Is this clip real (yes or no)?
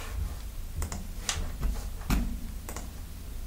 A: yes